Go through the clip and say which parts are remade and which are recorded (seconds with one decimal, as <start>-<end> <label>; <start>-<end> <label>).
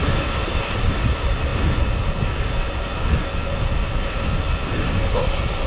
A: 0.0-5.7 recorded